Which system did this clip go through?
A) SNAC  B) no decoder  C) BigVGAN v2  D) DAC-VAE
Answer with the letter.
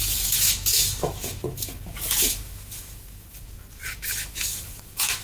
D